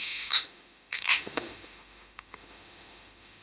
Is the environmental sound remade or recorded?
remade